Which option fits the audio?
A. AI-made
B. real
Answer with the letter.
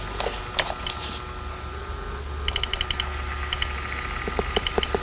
B